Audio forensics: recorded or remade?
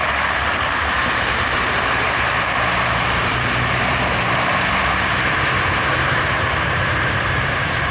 remade